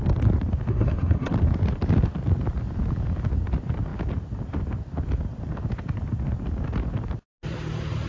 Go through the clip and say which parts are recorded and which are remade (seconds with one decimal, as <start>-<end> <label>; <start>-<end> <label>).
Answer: 0.0-0.7 recorded; 0.7-1.3 remade; 1.3-8.1 recorded